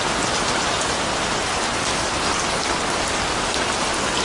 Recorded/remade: recorded